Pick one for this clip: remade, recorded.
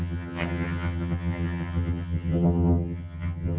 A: remade